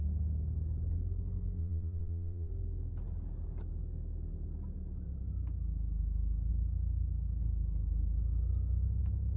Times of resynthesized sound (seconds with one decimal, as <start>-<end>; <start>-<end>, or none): 1.6-2.5